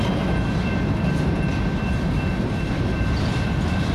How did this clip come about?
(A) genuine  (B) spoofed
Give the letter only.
A